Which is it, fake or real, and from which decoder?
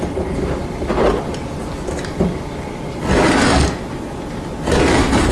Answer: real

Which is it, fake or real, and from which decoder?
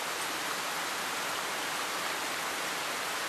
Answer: real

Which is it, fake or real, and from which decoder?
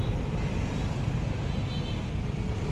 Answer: real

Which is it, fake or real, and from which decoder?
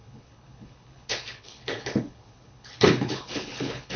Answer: fake, codec, HILCodec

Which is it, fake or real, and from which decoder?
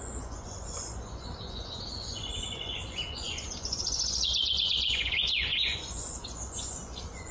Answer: fake, vocoder, Vocos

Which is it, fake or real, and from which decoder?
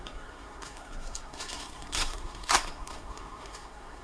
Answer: fake, codec, SNAC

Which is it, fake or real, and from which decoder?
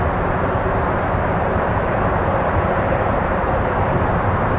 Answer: fake, vocoder, BigVGAN v2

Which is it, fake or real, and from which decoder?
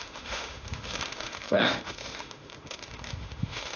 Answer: fake, autoencoder, DAC-VAE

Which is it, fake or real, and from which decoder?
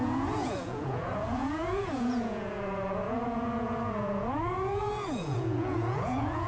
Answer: fake, vocoder, Vocos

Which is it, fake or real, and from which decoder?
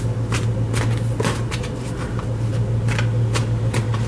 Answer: real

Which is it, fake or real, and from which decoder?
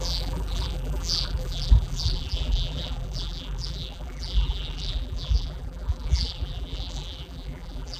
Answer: fake, vocoder, BigVGAN v2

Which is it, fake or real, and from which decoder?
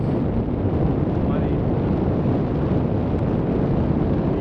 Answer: real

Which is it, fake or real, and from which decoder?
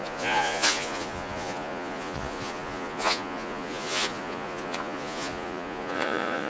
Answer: fake, vocoder, Vocos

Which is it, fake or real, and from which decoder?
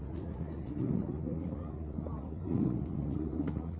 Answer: fake, vocoder, Vocos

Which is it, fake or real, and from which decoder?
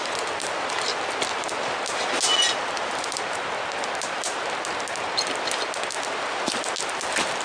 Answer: real